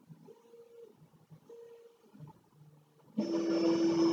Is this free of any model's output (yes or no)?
yes